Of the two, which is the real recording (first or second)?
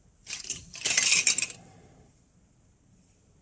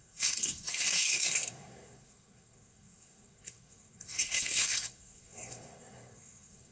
first